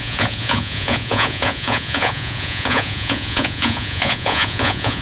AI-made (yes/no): yes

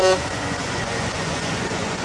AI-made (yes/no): yes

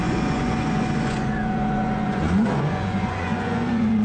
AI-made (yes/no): yes